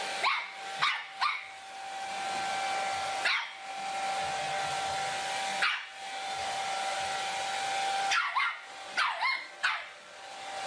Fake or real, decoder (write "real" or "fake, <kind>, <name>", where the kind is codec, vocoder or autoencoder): real